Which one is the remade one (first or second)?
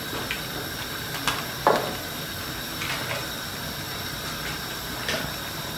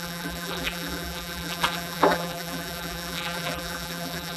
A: second